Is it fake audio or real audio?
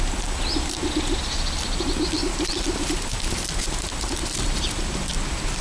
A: real